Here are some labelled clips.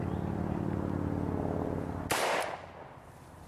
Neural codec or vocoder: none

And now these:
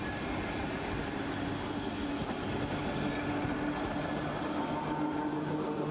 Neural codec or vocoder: none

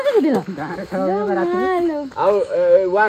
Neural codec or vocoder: autoencoder, DAC-VAE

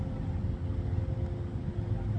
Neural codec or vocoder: none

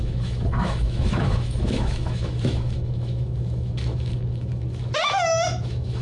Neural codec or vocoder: autoencoder, DAC-VAE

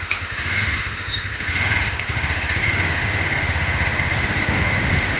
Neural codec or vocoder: autoencoder, DAC-VAE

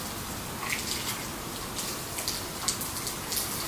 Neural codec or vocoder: none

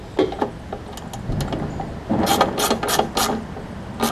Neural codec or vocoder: none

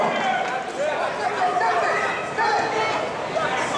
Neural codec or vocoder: none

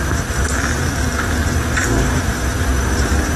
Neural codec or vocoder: none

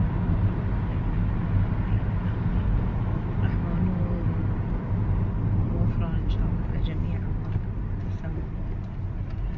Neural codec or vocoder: none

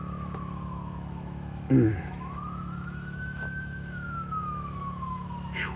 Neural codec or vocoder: autoencoder, DAC-VAE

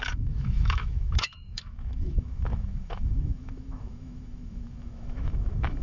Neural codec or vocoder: autoencoder, DAC-VAE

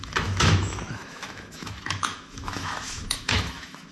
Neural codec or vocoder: autoencoder, DAC-VAE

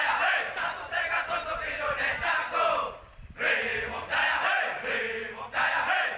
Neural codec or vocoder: none